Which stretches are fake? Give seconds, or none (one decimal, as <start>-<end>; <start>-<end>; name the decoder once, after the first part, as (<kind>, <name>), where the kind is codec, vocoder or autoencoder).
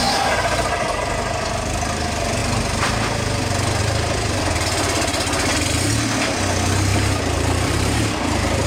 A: 6.9-8.7 (vocoder, BigVGAN v2)